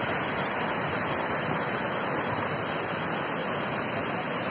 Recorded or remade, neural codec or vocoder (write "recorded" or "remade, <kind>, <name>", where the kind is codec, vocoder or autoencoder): recorded